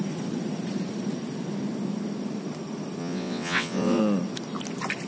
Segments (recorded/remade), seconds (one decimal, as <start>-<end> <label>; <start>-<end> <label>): 0.0-3.0 recorded; 3.0-4.0 remade; 4.0-5.1 recorded